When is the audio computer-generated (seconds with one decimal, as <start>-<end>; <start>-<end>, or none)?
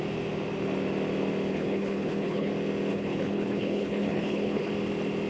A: 1.5-2.5; 2.9-4.7